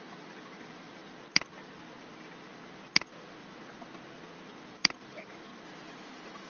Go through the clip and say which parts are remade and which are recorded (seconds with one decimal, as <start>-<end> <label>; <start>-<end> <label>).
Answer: 0.0-1.0 remade; 1.0-4.7 recorded; 4.7-5.5 remade; 5.5-6.0 recorded; 6.0-6.5 remade